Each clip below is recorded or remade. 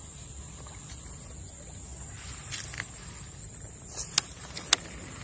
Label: recorded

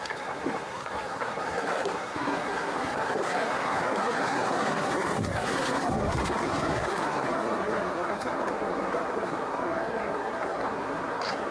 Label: remade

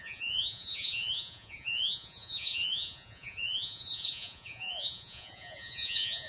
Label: remade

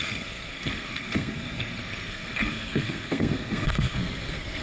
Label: remade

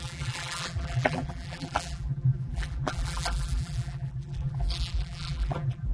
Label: remade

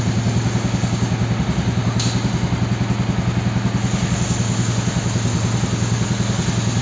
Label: recorded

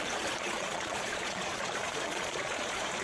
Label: remade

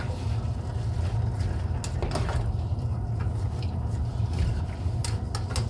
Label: recorded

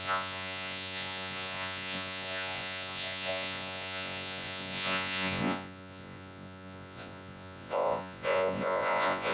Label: remade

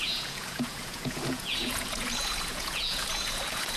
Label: remade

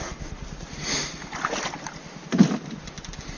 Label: recorded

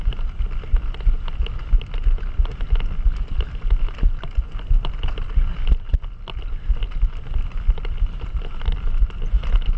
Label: recorded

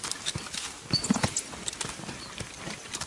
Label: recorded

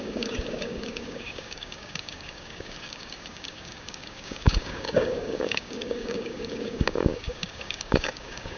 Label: remade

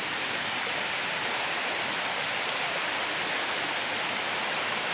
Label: recorded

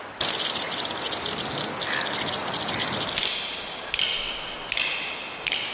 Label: recorded